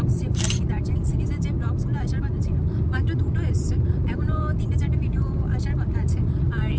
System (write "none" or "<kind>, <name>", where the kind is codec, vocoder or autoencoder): none